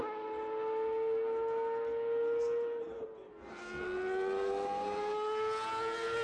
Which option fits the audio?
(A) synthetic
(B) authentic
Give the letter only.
B